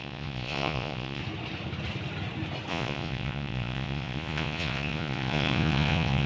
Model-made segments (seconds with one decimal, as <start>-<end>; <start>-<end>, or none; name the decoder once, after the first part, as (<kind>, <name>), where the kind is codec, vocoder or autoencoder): 0.0-1.2 (vocoder, Vocos); 2.7-6.3